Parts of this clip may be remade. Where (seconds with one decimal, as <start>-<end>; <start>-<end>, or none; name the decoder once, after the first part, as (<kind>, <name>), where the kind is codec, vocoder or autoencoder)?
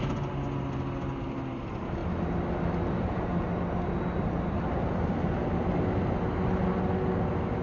none